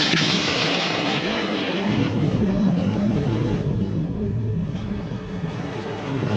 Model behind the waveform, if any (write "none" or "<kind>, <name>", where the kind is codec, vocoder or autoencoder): codec, SNAC